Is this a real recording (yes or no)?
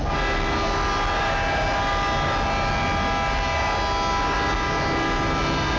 yes